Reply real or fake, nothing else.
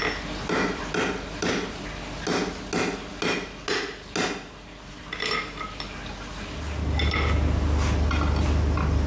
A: real